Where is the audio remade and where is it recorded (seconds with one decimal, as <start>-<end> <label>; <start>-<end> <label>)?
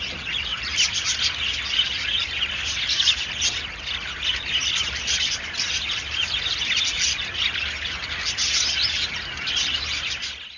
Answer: 0.0-10.6 recorded